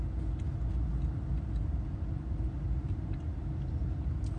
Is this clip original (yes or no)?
yes